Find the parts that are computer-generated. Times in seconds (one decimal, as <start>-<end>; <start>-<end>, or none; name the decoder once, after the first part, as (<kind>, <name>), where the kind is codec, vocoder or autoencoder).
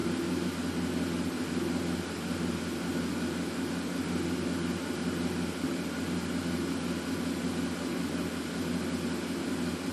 none